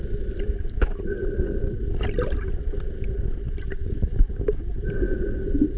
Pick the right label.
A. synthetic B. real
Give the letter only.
B